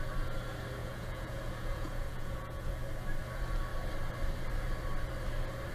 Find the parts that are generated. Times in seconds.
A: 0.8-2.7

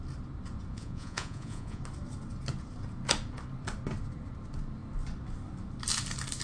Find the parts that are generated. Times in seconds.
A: 0.7-1.8

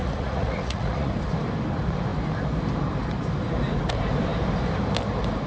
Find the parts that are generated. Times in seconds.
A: 0.0-1.1

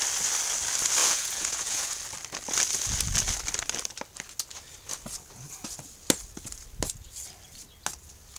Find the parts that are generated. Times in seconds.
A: 1.0-2.0